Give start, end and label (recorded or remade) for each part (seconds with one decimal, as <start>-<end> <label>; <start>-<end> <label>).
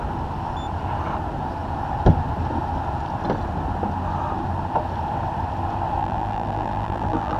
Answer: 0.0-6.0 recorded; 6.0-7.4 remade